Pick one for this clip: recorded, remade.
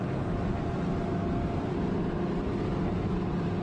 recorded